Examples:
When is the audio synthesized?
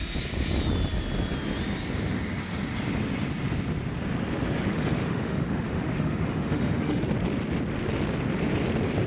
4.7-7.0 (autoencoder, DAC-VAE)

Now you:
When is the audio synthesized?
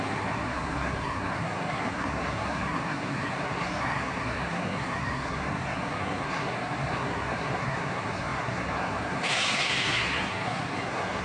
0.0-11.2 (codec, SNAC)